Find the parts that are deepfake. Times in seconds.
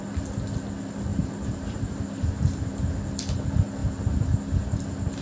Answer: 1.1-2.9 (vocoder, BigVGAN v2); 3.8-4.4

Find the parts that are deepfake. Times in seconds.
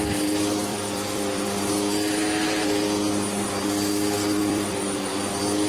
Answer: 0.7-1.7 (vocoder, BigVGAN v2); 4.4-5.3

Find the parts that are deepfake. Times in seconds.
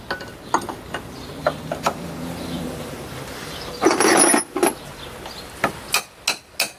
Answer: 1.4-4.2 (vocoder, BigVGAN v2)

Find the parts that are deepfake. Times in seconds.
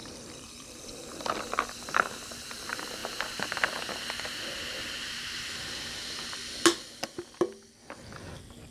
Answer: 0.0-0.8 (vocoder, BigVGAN v2)